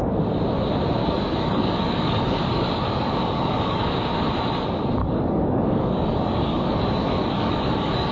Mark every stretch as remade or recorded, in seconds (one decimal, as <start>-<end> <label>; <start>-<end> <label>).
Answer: 0.0-1.0 recorded; 1.0-3.9 remade; 3.9-5.0 recorded; 5.0-8.1 remade